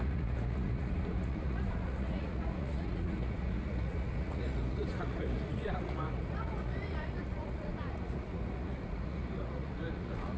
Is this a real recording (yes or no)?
no